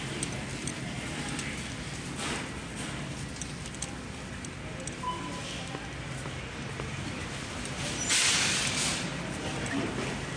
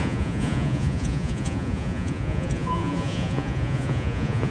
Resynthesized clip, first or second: second